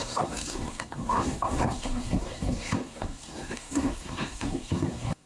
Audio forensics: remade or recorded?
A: remade